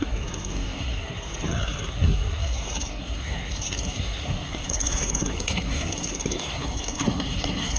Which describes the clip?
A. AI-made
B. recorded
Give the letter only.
A